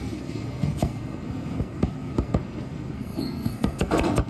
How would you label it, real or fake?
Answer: fake